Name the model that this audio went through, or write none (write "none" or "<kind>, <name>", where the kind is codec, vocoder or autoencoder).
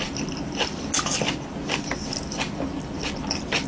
none